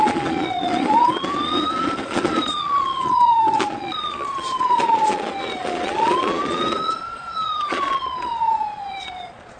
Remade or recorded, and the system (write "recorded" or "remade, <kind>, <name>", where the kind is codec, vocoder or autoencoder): remade, vocoder, Vocos